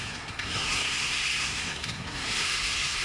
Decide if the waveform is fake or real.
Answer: fake